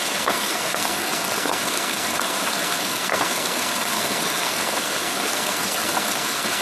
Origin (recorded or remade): remade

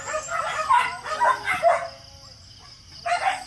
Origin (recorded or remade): recorded